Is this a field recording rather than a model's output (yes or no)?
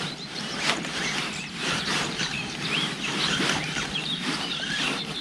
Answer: no